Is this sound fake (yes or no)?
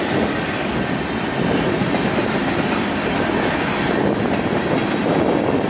no